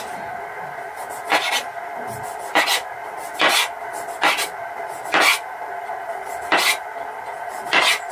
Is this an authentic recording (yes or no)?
yes